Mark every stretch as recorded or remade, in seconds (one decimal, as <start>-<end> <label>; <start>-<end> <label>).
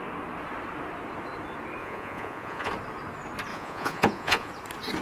0.0-1.8 recorded; 1.8-2.7 remade; 2.7-3.5 recorded; 3.5-4.5 remade; 4.5-5.0 recorded